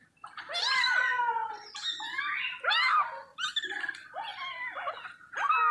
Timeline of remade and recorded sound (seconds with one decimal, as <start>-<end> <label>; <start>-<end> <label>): 0.0-5.7 recorded